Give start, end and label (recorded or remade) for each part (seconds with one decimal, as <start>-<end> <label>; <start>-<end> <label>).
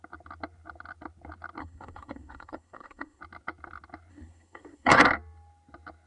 0.0-1.6 recorded; 1.6-3.2 remade; 3.2-4.1 recorded; 4.1-5.1 remade; 5.1-6.1 recorded